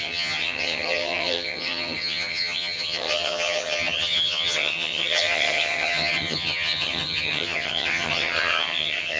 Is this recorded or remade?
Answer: remade